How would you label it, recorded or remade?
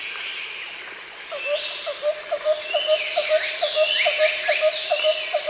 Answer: recorded